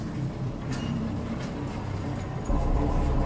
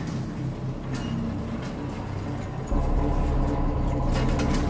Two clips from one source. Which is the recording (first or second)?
second